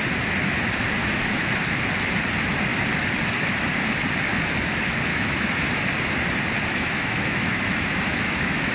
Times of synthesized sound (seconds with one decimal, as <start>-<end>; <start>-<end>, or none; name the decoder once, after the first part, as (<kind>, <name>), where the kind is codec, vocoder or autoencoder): 1.0-1.6 (autoencoder, DAC-VAE); 5.1-5.8; 6.7-8.7